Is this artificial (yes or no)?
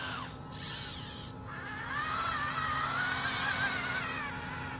no